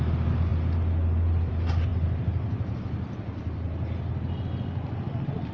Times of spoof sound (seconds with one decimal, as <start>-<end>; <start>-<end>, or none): none